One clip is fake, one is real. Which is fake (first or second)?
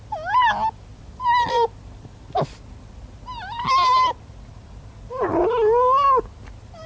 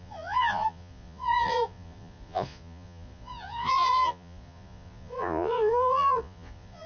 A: second